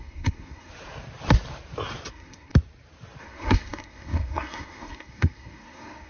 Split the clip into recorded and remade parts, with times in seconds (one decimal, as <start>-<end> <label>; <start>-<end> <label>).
0.0-0.7 remade; 0.7-2.1 recorded; 2.1-2.5 remade; 2.5-3.2 recorded; 3.2-6.1 remade